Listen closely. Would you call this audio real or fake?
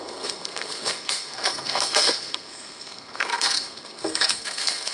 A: fake